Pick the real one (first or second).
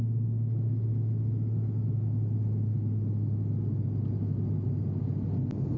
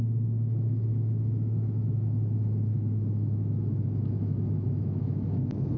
first